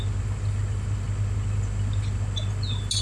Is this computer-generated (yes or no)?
no